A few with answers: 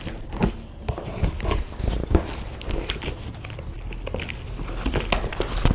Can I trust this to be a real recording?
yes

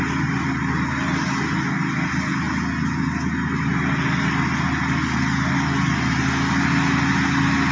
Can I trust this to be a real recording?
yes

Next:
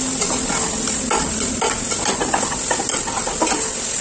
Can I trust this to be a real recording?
yes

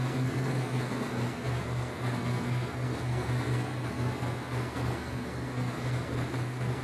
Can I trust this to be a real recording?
no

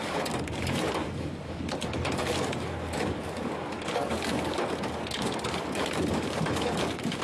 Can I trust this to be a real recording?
no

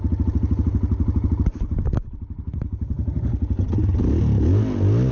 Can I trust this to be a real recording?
yes